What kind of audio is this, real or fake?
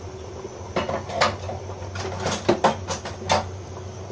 real